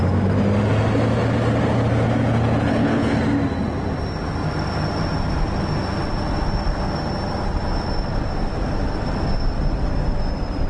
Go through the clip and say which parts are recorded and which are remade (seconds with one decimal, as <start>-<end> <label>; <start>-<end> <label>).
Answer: 0.0-2.7 recorded; 2.7-3.2 remade; 3.2-10.7 recorded